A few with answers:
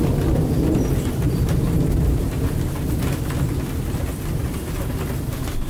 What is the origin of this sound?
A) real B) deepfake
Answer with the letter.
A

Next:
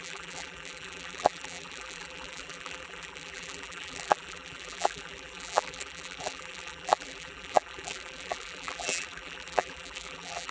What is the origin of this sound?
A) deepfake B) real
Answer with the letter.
A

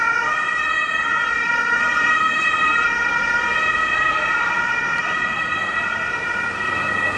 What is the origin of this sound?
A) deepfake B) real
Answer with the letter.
B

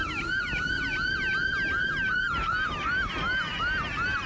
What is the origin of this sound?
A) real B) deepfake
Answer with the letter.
B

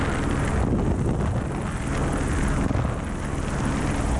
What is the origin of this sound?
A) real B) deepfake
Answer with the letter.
A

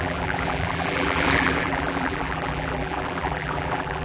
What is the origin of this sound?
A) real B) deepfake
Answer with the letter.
B